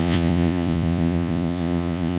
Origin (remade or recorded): remade